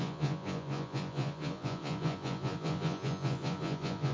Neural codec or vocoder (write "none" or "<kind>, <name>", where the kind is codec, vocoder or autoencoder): vocoder, Vocos